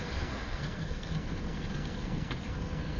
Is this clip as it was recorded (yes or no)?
no